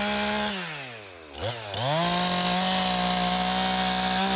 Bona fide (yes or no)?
yes